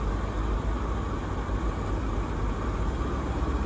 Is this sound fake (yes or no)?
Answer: no